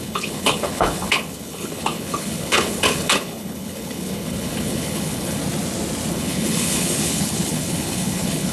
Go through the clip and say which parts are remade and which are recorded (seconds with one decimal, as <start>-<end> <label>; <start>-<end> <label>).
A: 0.0-5.4 remade; 5.4-6.1 recorded; 6.1-8.5 remade